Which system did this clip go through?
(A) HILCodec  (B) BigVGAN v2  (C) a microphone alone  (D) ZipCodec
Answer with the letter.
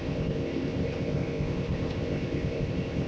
D